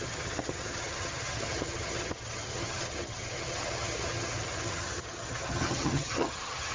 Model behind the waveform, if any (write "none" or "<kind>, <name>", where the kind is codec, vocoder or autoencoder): vocoder, HiFi-GAN